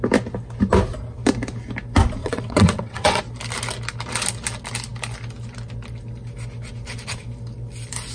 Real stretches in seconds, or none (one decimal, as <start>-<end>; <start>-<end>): 0.0-2.2; 3.2-8.1